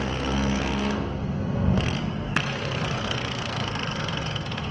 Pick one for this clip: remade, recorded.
remade